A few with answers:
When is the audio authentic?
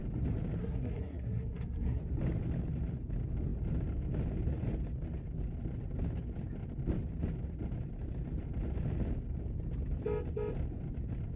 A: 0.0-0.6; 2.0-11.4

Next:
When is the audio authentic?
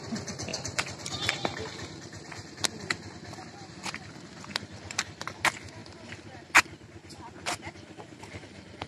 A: 0.0-0.5; 5.3-5.8; 8.0-8.9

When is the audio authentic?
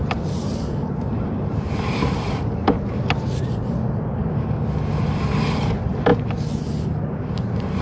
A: 0.0-7.8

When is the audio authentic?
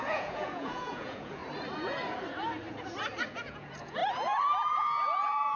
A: 1.4-3.2; 4.0-4.7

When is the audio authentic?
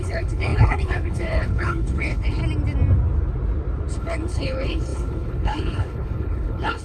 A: 2.4-3.9